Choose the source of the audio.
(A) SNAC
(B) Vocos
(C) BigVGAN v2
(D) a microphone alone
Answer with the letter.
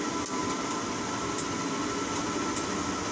D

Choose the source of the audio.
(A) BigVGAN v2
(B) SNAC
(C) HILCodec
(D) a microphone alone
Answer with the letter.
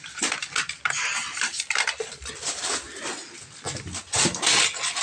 D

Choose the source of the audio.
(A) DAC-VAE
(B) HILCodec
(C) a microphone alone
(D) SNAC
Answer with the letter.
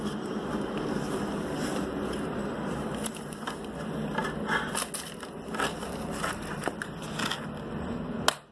C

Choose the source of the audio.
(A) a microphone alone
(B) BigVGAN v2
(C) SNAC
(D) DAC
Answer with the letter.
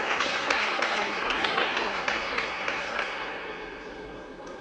C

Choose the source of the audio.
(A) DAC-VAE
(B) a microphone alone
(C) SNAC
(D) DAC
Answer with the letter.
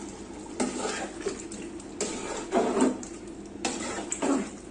B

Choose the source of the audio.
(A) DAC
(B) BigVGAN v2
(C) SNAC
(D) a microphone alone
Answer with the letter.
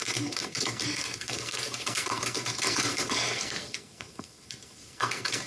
C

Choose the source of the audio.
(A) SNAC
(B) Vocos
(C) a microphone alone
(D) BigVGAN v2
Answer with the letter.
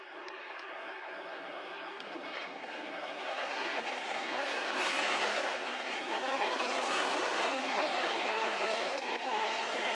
A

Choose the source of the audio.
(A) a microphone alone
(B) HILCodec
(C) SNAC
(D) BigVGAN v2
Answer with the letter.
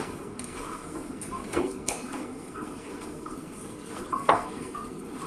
C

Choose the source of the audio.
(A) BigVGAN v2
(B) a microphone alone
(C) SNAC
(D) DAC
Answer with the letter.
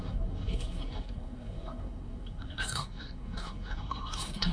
C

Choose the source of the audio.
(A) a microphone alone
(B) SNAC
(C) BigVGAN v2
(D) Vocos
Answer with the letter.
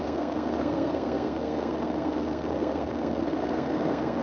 B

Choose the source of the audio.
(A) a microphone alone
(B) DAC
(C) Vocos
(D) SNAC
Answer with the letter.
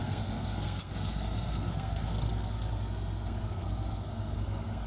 D